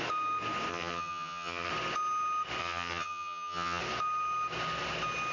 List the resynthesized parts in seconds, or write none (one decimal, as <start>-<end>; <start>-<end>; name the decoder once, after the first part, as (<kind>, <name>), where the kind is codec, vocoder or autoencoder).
0.7-1.7 (vocoder, HiFi-GAN); 2.6-3.8